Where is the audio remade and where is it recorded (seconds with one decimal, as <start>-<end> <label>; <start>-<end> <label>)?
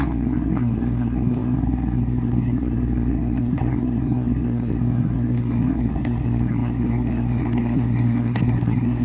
0.0-9.0 remade